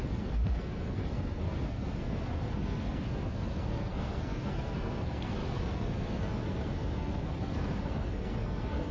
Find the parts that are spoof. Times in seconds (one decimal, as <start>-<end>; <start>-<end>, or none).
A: 0.0-8.9